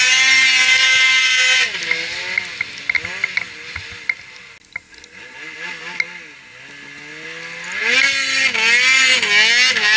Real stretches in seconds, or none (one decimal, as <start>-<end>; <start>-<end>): 0.0-10.0